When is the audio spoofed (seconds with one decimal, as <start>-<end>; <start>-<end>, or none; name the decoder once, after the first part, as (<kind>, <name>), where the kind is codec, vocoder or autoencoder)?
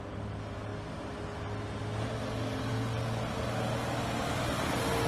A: none